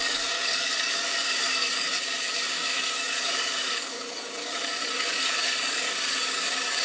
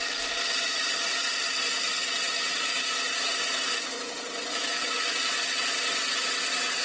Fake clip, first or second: first